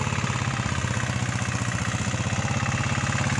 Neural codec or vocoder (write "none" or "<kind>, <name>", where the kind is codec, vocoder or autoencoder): none